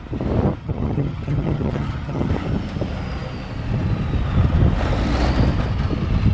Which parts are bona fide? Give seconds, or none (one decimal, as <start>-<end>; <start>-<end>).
0.0-0.6; 2.3-6.3